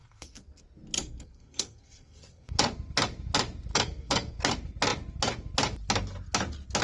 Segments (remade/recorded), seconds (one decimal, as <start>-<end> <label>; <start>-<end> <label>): 0.0-0.6 remade; 0.6-1.0 recorded; 1.0-2.6 remade; 2.6-3.7 recorded; 3.7-4.4 remade; 4.4-6.8 recorded